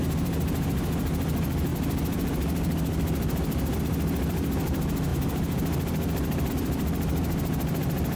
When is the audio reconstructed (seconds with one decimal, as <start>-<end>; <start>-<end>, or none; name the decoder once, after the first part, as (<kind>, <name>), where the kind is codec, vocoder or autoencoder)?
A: none